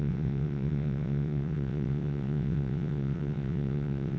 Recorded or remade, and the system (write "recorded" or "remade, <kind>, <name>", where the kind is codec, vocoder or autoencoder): remade, vocoder, WaveNeXt